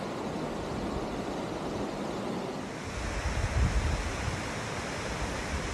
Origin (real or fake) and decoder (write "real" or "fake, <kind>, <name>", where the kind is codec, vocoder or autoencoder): real